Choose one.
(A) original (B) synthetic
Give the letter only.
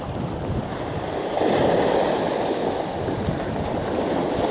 A